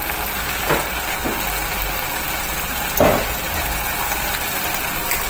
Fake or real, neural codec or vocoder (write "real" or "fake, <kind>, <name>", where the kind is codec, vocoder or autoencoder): real